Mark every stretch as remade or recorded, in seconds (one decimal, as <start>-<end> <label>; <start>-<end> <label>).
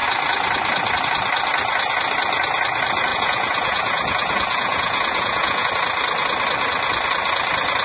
0.0-3.1 recorded; 3.1-5.7 remade; 5.7-7.8 recorded